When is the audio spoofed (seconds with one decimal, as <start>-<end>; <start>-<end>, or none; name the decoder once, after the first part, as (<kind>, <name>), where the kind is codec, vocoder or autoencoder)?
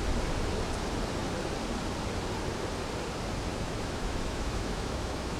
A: 3.5-5.4 (autoencoder, DAC-VAE)